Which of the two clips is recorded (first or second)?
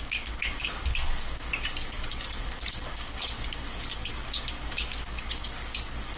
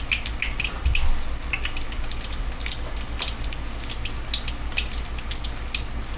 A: second